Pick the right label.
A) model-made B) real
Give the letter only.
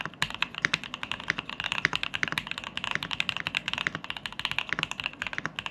B